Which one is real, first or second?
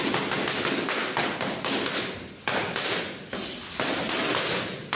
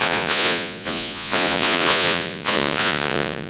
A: first